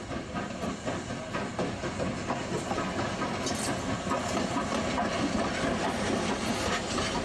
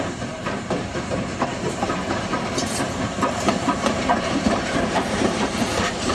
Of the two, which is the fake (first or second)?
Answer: second